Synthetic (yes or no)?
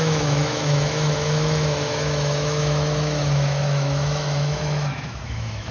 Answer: yes